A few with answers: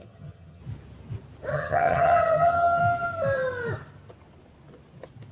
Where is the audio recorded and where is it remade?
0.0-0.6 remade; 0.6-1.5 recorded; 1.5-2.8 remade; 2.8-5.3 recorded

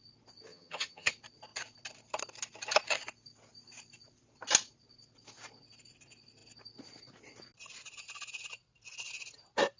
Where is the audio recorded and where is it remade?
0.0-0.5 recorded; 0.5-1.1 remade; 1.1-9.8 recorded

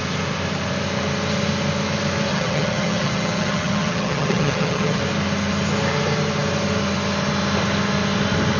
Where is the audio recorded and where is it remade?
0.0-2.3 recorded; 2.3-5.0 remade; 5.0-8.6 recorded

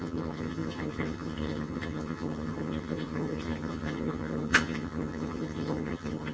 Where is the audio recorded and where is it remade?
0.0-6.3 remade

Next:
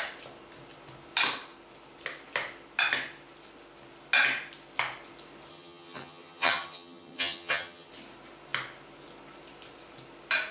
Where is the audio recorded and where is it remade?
0.0-5.5 recorded; 5.5-7.9 remade; 7.9-10.5 recorded

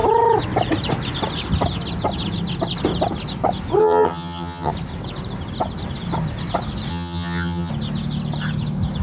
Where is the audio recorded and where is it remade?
0.0-3.8 recorded; 3.8-4.7 remade; 4.7-6.9 recorded; 6.9-7.7 remade; 7.7-9.0 recorded